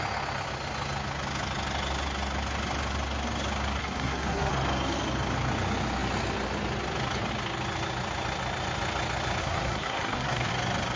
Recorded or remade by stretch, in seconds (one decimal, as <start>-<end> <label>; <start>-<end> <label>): 0.0-3.8 recorded; 3.8-4.5 remade; 4.5-9.4 recorded; 9.4-10.5 remade; 10.5-11.0 recorded